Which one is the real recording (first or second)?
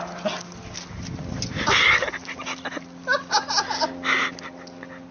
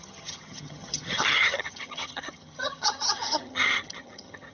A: first